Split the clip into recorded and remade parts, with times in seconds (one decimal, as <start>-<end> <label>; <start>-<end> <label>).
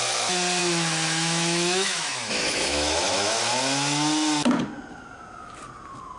0.0-0.6 recorded; 0.6-3.4 remade; 3.4-6.2 recorded